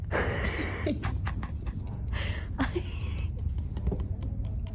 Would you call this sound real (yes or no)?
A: yes